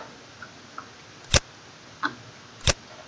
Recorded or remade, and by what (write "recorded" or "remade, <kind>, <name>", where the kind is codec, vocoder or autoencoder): recorded